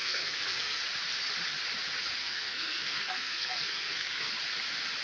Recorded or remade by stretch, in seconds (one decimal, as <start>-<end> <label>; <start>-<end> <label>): 0.0-0.8 remade; 0.8-2.2 recorded; 2.2-4.3 remade; 4.3-5.0 recorded